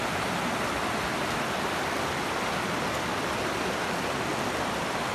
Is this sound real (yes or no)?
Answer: yes